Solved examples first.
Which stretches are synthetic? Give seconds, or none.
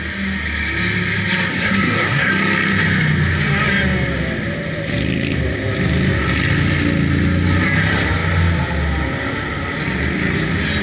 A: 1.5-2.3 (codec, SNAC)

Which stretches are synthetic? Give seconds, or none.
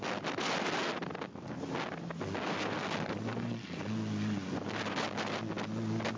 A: none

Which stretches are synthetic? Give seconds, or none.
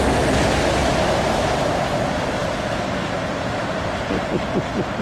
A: none